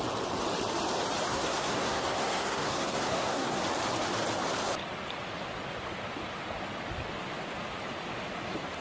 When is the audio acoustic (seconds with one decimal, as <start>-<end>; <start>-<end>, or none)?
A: 0.0-1.3; 3.6-8.8